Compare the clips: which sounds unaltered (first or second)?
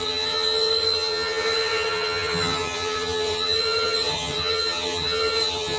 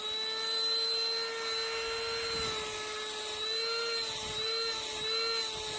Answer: second